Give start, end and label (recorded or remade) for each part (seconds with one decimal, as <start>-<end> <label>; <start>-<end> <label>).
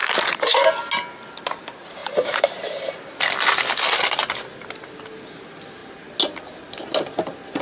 0.0-0.7 remade; 0.7-2.0 recorded; 2.0-3.0 remade; 3.0-7.6 recorded